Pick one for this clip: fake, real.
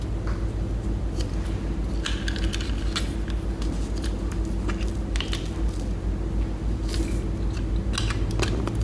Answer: real